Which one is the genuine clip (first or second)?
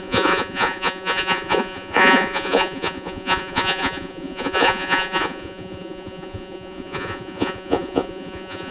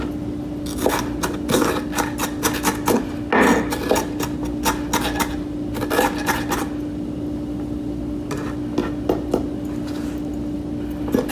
second